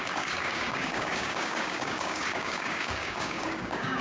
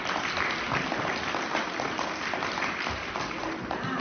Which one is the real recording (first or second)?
second